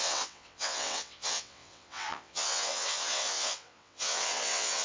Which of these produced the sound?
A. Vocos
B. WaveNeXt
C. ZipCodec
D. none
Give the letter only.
B